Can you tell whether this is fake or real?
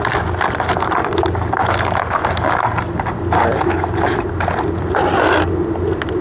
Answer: real